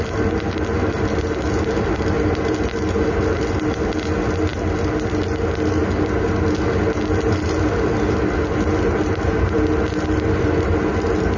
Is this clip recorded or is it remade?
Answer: recorded